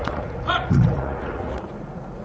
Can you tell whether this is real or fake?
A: fake